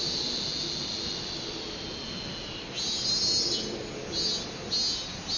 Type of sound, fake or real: real